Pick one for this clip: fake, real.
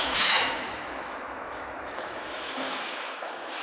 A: fake